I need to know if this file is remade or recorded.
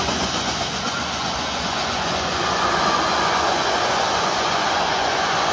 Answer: remade